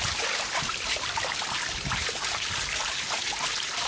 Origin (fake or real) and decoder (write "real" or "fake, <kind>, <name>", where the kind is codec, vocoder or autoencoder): fake, vocoder, BigVGAN v2